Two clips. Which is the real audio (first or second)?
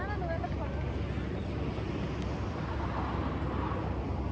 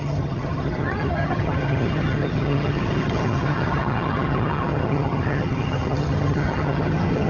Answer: first